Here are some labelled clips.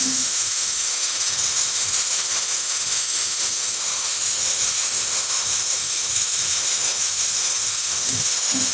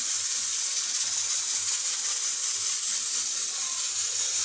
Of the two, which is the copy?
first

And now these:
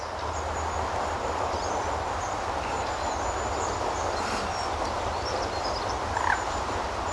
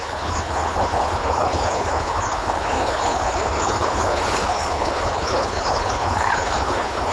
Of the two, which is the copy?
second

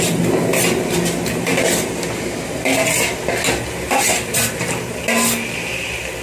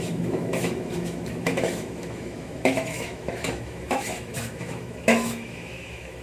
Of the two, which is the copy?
second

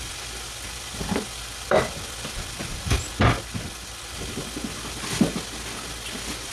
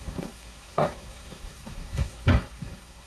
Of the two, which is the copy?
second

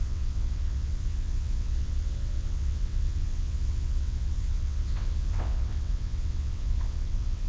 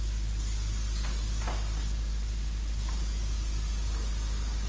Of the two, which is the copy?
first